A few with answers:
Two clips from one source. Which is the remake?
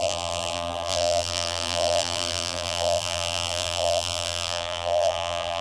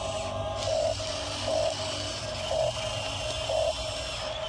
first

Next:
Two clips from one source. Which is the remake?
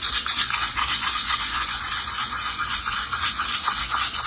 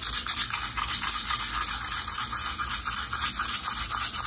first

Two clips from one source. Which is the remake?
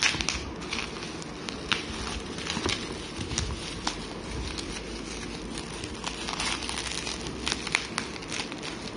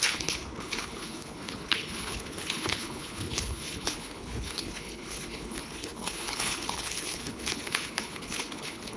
second